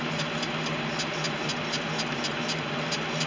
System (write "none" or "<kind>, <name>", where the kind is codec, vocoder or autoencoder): none